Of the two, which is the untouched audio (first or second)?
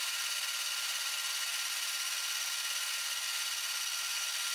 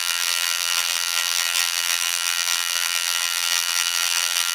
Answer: first